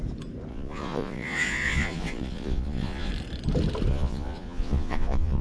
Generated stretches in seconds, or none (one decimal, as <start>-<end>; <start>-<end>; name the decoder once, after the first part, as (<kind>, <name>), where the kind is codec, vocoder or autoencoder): 0.5-3.1 (vocoder, Vocos); 3.9-5.4